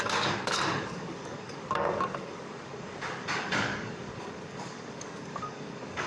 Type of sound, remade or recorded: remade